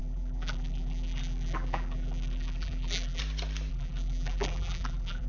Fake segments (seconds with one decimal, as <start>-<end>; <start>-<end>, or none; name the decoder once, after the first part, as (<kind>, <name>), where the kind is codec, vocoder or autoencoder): 0.0-3.2 (vocoder, BigVGAN v2); 3.7-5.3